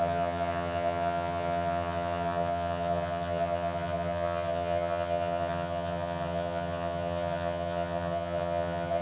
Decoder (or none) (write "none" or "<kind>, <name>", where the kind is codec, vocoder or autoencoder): vocoder, HiFi-GAN